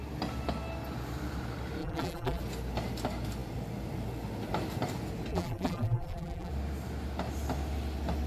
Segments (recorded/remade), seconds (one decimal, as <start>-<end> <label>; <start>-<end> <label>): 0.0-1.8 recorded; 1.8-2.4 remade; 2.4-5.3 recorded; 5.3-6.5 remade; 6.5-8.3 recorded

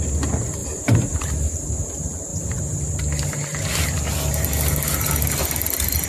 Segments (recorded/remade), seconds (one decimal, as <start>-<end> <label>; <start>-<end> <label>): 0.0-0.6 recorded; 0.6-1.7 remade; 1.7-2.3 recorded; 2.3-3.0 remade; 3.0-6.1 recorded

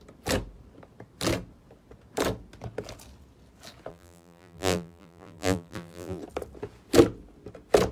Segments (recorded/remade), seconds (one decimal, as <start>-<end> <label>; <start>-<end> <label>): 0.0-3.9 recorded; 3.9-6.2 remade; 6.2-7.9 recorded